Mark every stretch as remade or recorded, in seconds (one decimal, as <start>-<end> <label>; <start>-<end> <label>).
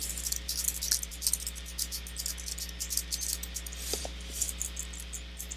0.0-5.6 recorded